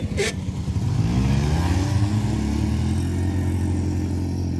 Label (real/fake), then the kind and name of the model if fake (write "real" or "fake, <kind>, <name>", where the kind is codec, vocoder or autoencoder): real